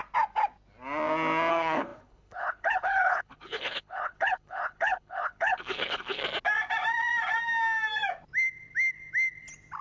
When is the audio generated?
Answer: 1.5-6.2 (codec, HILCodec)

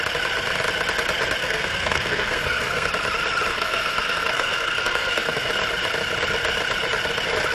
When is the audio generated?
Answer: 1.4-2.9 (codec, SNAC); 3.5-5.5